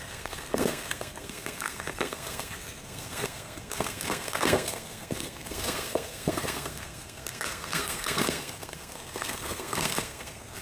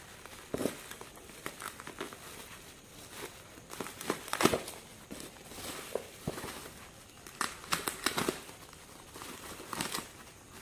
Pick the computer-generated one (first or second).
first